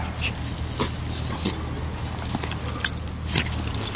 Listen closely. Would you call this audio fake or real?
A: real